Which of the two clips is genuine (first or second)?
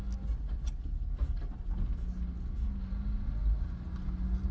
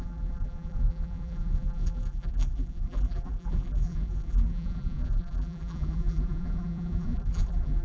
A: first